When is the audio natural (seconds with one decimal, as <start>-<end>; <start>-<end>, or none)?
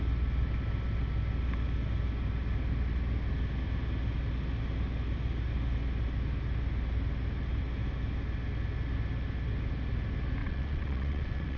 0.0-10.4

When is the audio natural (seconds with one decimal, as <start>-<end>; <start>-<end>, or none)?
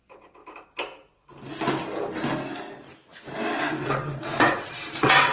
0.4-3.6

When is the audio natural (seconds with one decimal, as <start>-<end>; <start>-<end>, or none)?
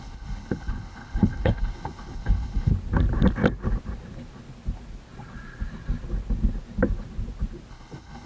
2.7-7.7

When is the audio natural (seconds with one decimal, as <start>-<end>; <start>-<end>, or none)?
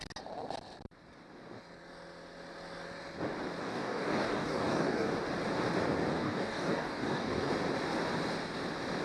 0.0-3.6; 5.1-6.1; 7.5-9.0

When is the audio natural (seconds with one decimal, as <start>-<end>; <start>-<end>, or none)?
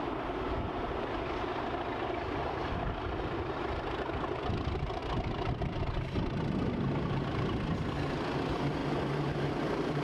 8.8-9.6